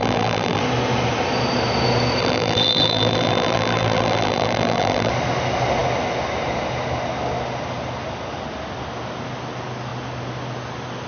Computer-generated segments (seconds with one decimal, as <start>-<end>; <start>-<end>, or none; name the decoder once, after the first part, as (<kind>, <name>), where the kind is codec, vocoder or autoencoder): 0.0-0.6 (vocoder, BigVGAN v2); 2.2-5.1